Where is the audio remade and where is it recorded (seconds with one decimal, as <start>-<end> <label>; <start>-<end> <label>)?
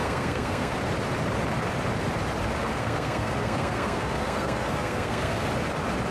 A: 0.0-0.7 remade; 0.7-2.8 recorded; 2.8-5.4 remade; 5.4-6.1 recorded